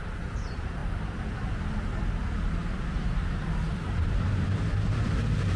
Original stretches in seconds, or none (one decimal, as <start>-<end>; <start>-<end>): 0.8-2.9